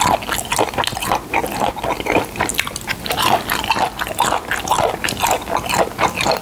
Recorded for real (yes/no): yes